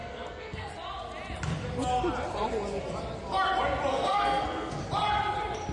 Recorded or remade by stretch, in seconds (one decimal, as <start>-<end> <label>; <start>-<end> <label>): 0.0-0.7 remade; 0.7-3.9 recorded; 3.9-4.8 remade; 4.8-5.7 recorded